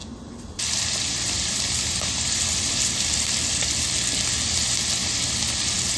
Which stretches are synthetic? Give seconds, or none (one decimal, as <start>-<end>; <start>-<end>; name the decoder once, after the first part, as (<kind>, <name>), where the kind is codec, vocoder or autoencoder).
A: 0.0-3.6 (vocoder, BigVGAN v2); 5.0-6.0